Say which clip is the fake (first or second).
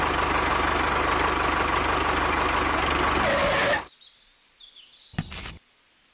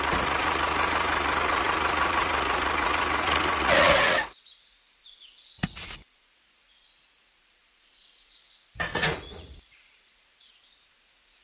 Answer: second